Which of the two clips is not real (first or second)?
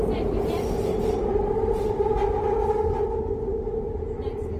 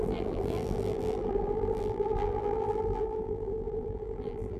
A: second